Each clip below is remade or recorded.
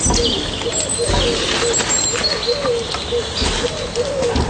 recorded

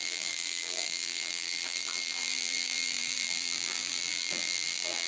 remade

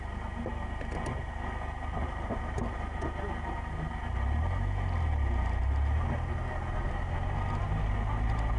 recorded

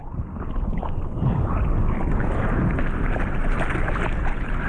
recorded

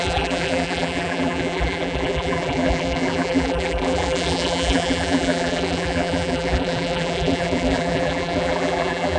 remade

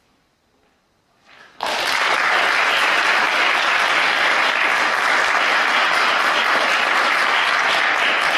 recorded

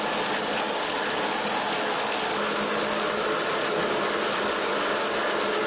recorded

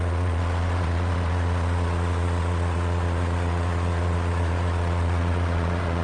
remade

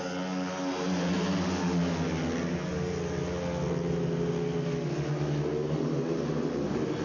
recorded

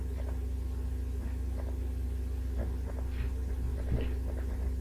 recorded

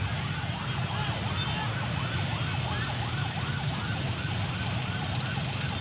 recorded